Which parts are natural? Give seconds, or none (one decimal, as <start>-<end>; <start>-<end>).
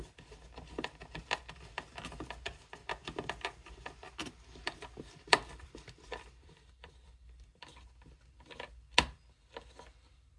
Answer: 0.0-4.2; 7.6-10.4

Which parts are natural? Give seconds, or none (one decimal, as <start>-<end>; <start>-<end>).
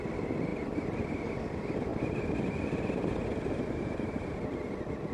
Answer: 0.0-1.9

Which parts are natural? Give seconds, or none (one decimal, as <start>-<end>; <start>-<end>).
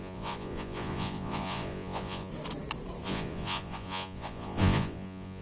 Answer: 2.3-3.0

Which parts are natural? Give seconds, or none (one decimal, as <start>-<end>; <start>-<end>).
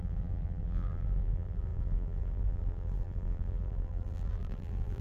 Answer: none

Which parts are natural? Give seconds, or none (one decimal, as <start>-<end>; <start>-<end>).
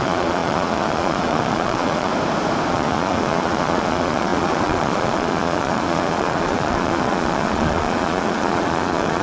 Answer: 2.1-2.7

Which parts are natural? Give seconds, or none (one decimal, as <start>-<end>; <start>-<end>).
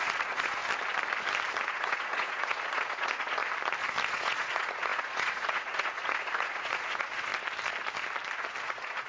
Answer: 0.6-1.6; 3.4-4.1; 7.3-8.6